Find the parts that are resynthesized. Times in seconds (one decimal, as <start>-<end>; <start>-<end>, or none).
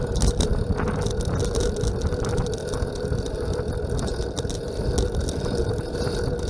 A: none